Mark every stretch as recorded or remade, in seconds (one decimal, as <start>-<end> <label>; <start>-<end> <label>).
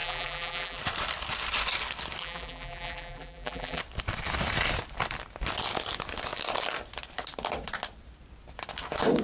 0.0-0.8 remade; 0.8-2.2 recorded; 2.2-3.8 remade; 3.8-9.2 recorded